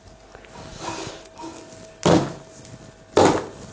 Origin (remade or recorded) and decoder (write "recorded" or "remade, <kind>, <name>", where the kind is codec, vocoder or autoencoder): recorded